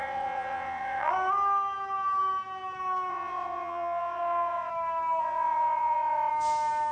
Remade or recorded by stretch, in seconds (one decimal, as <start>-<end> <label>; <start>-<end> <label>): 0.0-1.1 remade; 1.1-3.1 recorded; 3.1-4.7 remade; 4.7-5.2 recorded; 5.2-6.3 remade; 6.3-6.9 recorded